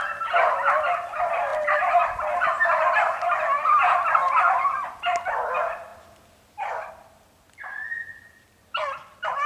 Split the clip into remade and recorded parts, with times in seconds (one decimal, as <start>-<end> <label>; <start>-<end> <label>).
0.0-9.5 recorded